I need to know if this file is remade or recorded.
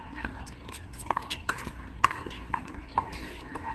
remade